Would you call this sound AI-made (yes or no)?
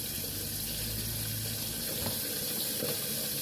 no